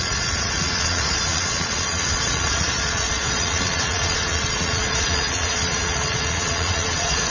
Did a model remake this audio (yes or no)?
yes